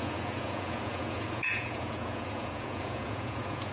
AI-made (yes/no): yes